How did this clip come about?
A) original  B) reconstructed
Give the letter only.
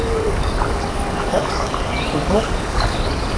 B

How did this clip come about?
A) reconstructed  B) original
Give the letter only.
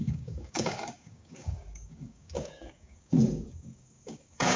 A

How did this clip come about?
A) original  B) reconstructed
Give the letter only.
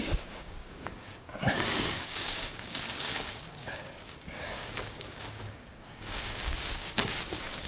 B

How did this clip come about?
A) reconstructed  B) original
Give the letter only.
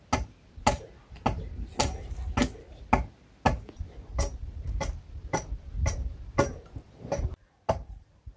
B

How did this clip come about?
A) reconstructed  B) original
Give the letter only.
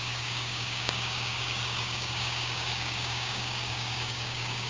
A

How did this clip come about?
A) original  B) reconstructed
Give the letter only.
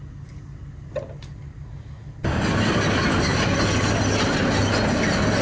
A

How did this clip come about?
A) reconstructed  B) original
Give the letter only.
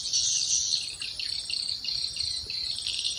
B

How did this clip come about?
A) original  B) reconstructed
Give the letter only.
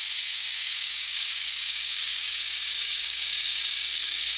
B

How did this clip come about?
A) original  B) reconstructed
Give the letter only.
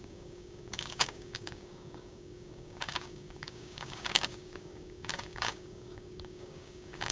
B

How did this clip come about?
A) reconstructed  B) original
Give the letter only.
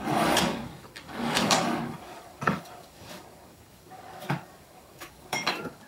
A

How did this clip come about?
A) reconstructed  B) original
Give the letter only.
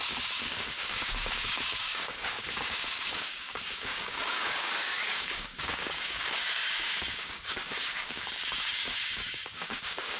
A